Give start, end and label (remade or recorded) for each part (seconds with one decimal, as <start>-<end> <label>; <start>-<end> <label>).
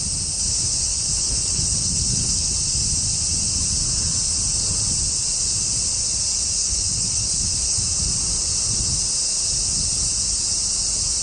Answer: 0.0-0.9 recorded; 0.9-2.5 remade; 2.5-6.6 recorded; 6.6-7.8 remade; 7.8-11.2 recorded